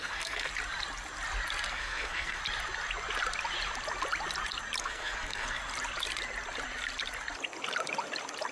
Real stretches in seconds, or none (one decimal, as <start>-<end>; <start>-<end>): 0.5-1.7; 2.4-4.8; 5.6-8.5